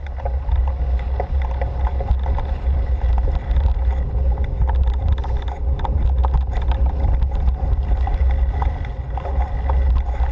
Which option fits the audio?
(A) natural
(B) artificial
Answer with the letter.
A